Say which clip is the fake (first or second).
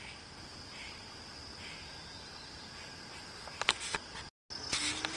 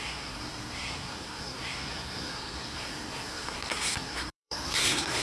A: second